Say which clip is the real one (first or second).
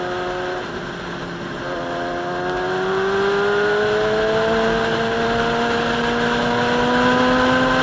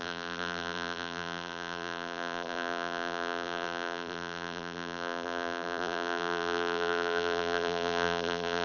first